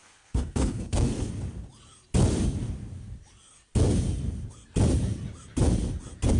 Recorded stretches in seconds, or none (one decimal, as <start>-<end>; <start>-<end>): 1.3-6.4